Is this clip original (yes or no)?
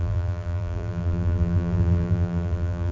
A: no